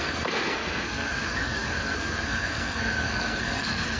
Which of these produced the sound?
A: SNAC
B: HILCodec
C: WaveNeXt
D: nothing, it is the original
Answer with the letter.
A